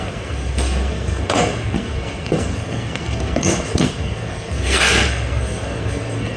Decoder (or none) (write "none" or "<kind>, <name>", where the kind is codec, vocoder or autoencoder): codec, SNAC